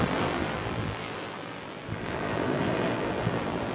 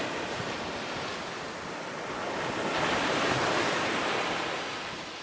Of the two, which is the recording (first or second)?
second